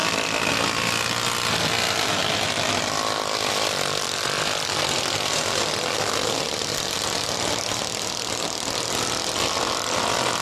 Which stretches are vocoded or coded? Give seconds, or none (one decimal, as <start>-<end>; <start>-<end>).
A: none